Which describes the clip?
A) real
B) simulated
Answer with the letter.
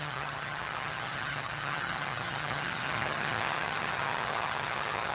B